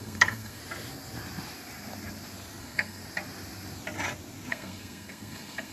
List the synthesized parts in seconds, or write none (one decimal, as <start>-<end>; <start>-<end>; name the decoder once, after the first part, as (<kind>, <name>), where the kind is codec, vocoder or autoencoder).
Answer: 0.0-0.6 (codec, SNAC); 2.6-3.0; 4.5-5.7